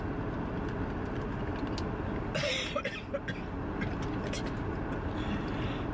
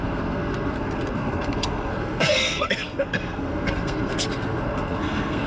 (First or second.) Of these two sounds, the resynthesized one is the second